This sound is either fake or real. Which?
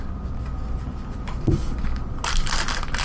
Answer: real